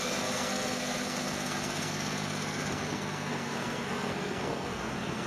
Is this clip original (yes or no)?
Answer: no